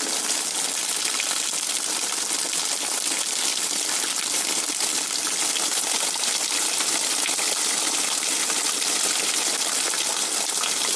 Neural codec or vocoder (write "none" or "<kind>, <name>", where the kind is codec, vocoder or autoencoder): none